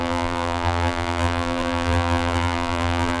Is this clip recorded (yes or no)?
no